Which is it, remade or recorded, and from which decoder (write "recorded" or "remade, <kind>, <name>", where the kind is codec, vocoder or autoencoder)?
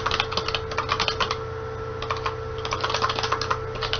recorded